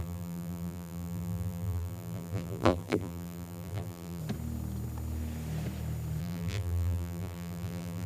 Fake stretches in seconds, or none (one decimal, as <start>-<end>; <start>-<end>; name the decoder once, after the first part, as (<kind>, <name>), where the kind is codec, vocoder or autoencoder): 0.0-4.2 (vocoder, BigVGAN v2); 6.2-8.1